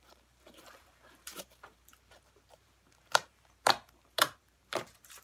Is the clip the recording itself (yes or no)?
no